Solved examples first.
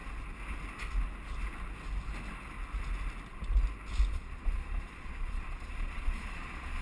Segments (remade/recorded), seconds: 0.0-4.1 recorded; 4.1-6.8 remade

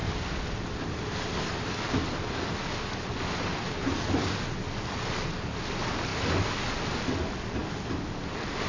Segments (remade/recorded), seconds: 0.0-8.7 recorded